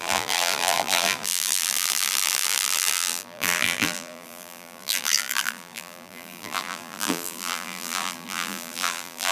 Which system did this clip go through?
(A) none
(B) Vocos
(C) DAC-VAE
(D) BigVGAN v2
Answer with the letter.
D